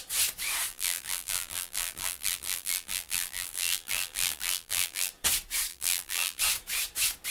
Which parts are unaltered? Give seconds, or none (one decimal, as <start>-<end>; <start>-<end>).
0.0-0.7; 5.1-5.7; 6.4-7.3